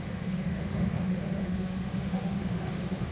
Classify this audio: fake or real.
fake